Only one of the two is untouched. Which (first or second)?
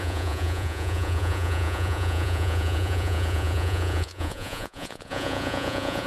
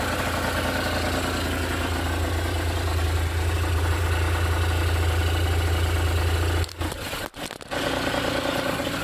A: second